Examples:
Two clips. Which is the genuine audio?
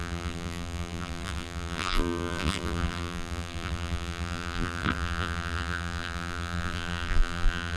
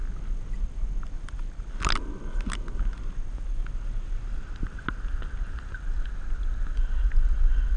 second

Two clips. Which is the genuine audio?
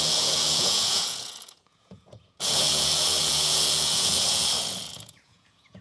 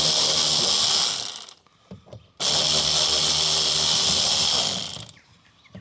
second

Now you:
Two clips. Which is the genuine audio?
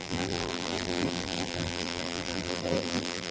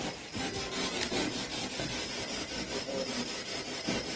second